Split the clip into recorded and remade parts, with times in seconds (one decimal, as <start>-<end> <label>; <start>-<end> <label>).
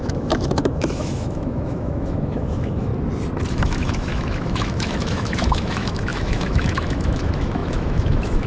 0.0-2.9 remade; 2.9-3.5 recorded; 3.5-8.5 remade